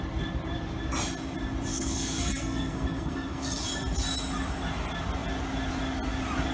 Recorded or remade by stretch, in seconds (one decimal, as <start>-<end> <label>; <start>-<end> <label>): 0.0-1.7 recorded; 1.7-3.6 remade; 3.6-6.5 recorded